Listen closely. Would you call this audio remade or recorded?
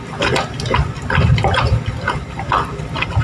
recorded